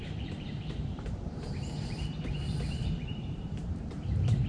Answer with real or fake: fake